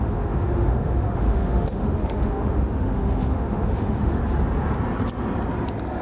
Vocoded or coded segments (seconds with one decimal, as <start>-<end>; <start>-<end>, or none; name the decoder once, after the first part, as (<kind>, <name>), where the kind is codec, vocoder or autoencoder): 0.0-4.2 (autoencoder, DAC-VAE)

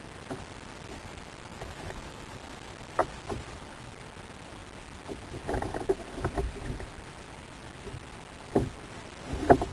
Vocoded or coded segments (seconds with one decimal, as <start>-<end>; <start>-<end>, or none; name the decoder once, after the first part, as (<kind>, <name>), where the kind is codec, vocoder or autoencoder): 1.5-2.3 (autoencoder, DAC-VAE)

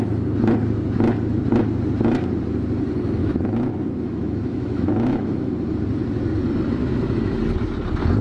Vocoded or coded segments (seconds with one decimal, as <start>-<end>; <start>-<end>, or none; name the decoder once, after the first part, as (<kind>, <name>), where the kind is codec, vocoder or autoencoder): 3.2-5.5 (autoencoder, DAC-VAE); 6.8-7.4

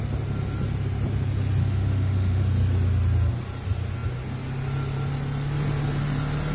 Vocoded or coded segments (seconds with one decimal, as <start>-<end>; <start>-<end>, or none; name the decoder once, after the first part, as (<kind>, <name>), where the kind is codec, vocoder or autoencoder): 1.6-2.4 (autoencoder, DAC-VAE)

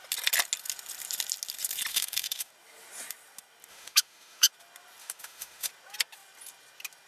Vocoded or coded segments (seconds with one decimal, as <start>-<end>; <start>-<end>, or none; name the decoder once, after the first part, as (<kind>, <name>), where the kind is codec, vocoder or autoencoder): 1.9-2.5 (autoencoder, DAC-VAE); 3.7-4.5; 5.0-5.7

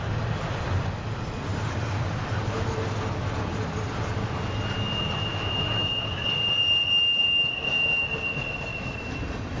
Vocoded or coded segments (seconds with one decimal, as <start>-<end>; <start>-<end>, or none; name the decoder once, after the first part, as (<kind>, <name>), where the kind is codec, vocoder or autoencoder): 5.3-6.2 (autoencoder, DAC-VAE); 8.7-9.2

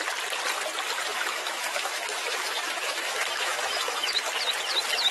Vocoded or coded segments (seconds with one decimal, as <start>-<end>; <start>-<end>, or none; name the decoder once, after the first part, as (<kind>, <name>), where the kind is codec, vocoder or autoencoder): 1.1-4.2 (autoencoder, DAC-VAE)